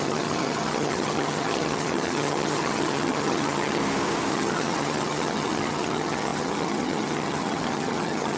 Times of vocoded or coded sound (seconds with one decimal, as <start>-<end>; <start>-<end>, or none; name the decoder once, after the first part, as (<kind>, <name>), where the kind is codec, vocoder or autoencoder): 0.0-3.8 (vocoder, HiFi-GAN); 4.3-8.4